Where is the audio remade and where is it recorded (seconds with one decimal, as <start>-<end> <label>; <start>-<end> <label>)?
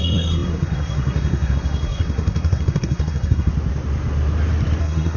0.0-3.5 remade; 3.5-4.8 recorded; 4.8-5.2 remade